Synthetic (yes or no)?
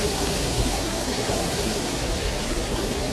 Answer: yes